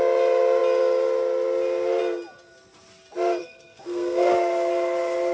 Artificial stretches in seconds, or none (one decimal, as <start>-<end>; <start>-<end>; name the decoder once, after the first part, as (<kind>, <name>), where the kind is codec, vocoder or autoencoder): 3.4-4.3 (codec, SNAC)